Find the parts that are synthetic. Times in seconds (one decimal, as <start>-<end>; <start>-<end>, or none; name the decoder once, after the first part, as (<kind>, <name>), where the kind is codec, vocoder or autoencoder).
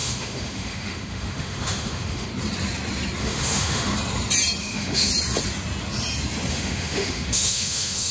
0.0-2.3 (autoencoder, DAC-VAE); 3.2-3.9; 4.6-5.1; 6.5-8.1